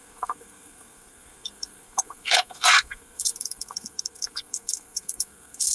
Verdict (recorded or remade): remade